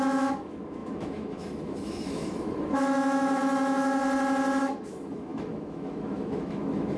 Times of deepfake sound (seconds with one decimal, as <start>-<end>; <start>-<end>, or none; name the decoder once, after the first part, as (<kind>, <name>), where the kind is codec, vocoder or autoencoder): 0.0-4.0 (autoencoder, DAC-VAE); 4.6-7.0